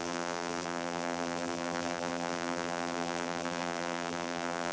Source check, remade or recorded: remade